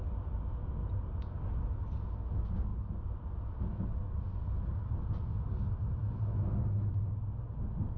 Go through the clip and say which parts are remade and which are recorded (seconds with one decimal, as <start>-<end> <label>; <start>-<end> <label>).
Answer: 0.0-0.8 recorded; 0.8-1.4 remade; 1.4-2.7 recorded; 2.7-3.6 remade; 3.6-8.0 recorded